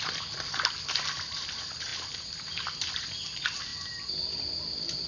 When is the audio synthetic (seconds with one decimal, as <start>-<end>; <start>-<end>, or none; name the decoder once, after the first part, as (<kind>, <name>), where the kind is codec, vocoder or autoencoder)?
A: none